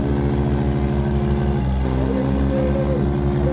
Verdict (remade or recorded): recorded